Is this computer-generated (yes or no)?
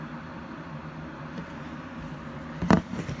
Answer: yes